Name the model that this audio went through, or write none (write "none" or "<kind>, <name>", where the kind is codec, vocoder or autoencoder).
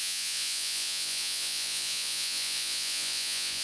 vocoder, Vocos